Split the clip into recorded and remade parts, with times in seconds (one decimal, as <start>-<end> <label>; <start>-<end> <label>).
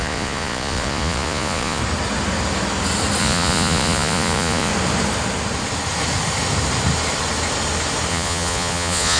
0.0-1.8 remade; 1.8-3.2 recorded; 3.2-4.7 remade; 4.7-8.1 recorded; 8.1-9.2 remade